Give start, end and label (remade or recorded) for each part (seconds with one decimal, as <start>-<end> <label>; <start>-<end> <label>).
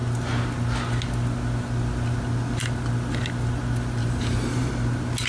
0.0-4.0 recorded; 4.0-4.7 remade; 4.7-5.3 recorded